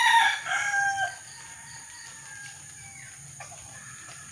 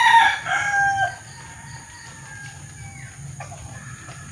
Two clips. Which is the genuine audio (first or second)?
second